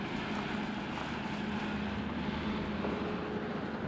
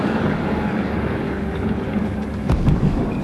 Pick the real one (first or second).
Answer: first